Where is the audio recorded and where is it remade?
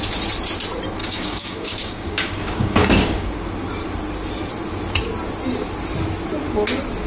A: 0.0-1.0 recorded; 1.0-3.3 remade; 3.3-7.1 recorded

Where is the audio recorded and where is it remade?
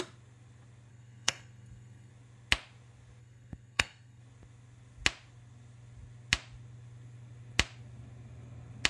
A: 0.0-0.9 recorded; 0.9-2.1 remade; 2.1-3.2 recorded; 3.2-4.2 remade; 4.2-8.9 recorded